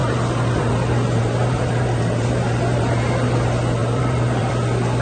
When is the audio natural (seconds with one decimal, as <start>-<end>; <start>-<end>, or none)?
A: 3.0-3.8; 4.5-5.0